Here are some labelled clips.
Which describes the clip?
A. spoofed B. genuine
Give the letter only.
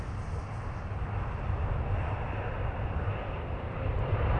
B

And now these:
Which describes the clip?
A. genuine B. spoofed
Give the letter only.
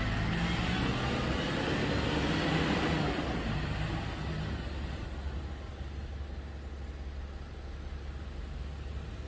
A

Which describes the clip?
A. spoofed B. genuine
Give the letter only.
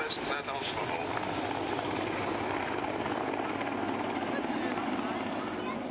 B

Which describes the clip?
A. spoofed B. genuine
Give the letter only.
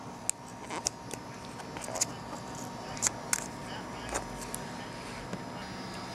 B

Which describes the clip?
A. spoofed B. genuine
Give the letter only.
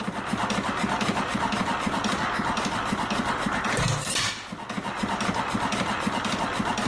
B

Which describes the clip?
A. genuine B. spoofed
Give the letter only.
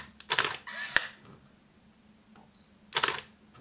A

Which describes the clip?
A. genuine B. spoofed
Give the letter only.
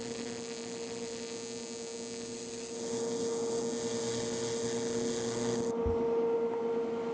A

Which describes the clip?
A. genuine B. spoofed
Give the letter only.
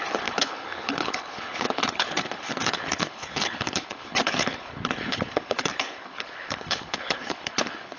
B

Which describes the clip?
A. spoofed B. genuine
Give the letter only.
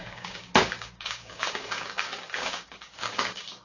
A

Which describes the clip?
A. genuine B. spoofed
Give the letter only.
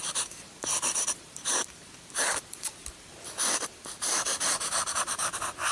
B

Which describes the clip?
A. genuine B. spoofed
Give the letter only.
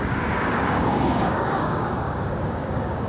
B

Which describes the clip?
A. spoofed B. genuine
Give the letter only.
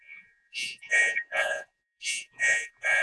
A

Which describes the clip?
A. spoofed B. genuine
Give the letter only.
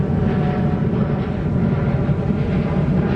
B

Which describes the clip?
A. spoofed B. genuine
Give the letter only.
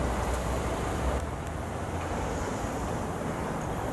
A